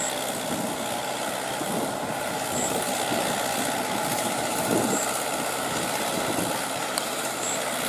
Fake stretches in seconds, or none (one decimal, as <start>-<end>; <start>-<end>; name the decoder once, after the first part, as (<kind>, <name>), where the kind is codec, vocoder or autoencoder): 4.1-4.7 (vocoder, BigVGAN v2); 6.8-7.3